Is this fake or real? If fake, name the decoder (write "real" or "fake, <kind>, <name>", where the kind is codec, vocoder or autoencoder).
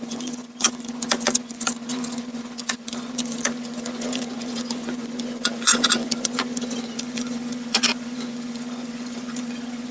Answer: fake, vocoder, Vocos